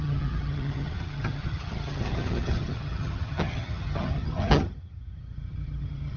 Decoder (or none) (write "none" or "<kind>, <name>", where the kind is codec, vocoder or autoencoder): vocoder, HiFi-GAN